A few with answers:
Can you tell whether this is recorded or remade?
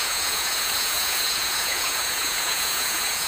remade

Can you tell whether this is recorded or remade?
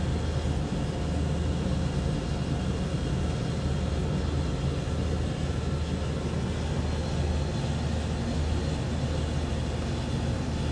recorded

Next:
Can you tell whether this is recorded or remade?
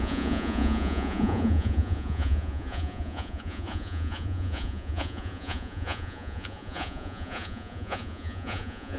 remade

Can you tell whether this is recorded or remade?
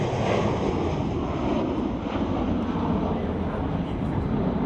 recorded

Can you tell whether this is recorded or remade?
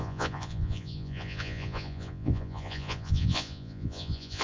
remade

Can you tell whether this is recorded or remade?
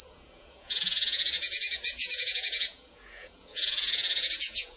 remade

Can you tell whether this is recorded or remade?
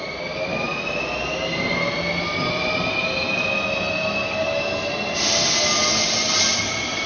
recorded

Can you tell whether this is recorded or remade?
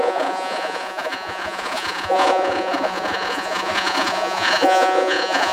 remade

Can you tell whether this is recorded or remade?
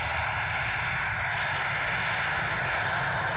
recorded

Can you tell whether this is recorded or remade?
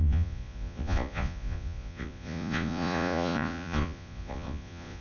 remade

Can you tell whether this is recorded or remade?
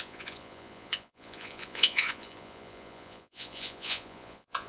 remade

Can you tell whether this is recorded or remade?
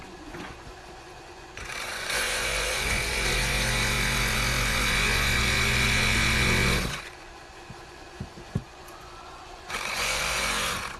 remade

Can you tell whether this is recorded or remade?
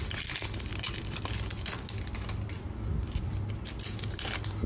recorded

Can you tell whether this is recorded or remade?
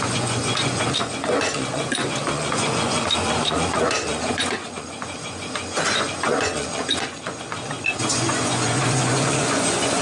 remade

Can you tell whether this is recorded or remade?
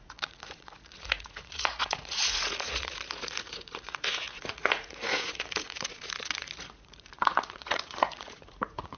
remade